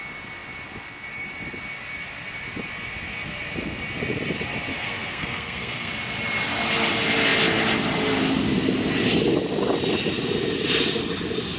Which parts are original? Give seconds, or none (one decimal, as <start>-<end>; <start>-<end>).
0.0-4.7; 5.9-11.6